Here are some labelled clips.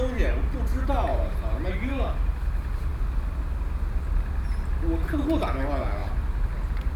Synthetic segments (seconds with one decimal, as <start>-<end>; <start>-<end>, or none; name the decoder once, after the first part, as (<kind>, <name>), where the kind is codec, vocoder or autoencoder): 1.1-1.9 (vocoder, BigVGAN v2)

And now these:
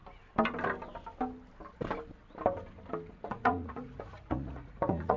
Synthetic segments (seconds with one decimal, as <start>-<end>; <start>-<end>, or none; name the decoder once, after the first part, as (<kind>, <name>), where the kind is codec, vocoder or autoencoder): 3.1-5.2 (vocoder, Vocos)

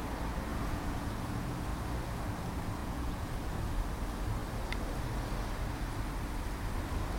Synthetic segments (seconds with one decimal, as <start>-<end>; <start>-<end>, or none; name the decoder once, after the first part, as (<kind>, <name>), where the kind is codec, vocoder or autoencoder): 0.5-1.1 (vocoder, Vocos); 2.8-3.3